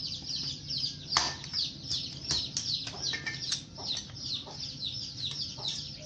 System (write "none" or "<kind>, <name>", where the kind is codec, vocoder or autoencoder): none